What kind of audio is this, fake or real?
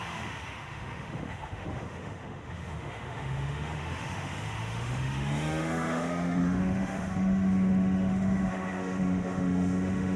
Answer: fake